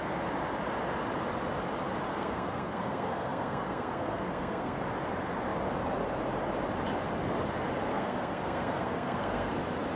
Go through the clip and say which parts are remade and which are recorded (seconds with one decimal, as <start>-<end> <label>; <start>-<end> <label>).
0.0-2.1 recorded; 2.1-4.8 remade; 4.8-7.9 recorded; 7.9-9.5 remade; 9.5-10.0 recorded